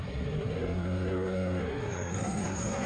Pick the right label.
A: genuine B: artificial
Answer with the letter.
B